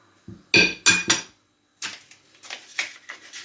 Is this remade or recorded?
recorded